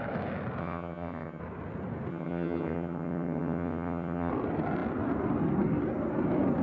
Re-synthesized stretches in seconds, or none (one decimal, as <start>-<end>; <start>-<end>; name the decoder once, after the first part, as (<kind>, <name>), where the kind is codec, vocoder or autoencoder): 0.6-1.4 (vocoder, HiFi-GAN); 2.1-4.3